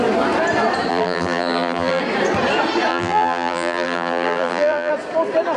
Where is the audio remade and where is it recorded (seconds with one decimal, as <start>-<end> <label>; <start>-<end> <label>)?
0.0-0.9 recorded; 0.9-2.0 remade; 2.0-2.9 recorded; 2.9-4.9 remade; 4.9-5.6 recorded